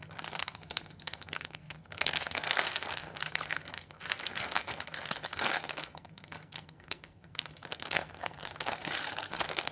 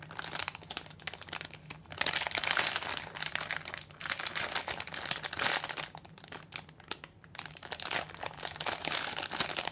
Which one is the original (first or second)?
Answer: second